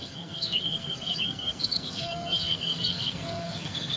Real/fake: fake